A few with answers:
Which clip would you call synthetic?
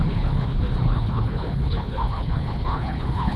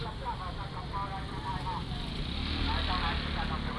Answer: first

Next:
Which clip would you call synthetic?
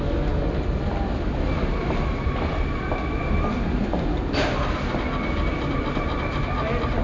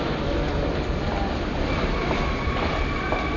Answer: second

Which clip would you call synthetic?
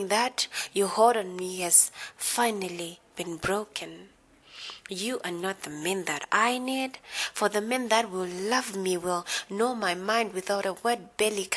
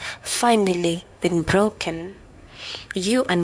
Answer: second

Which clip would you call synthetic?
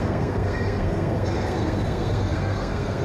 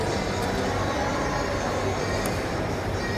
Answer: first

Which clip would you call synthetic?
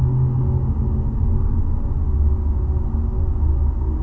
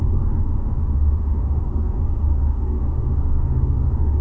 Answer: second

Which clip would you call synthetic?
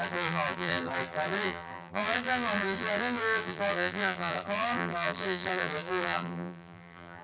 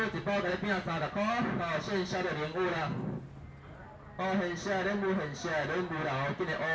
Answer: first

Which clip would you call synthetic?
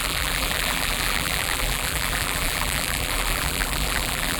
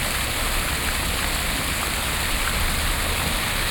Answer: first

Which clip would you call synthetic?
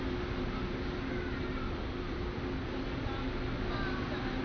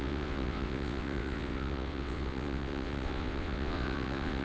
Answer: second